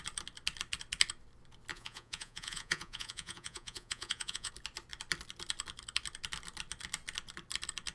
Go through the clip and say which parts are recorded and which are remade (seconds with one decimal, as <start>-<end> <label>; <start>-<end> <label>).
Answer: 0.0-1.7 recorded; 1.7-4.5 remade; 4.5-7.9 recorded